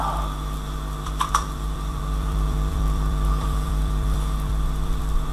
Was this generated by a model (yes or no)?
yes